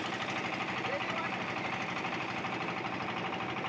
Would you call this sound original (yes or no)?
yes